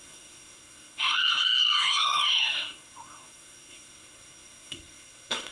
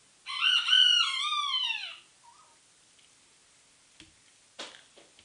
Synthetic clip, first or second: first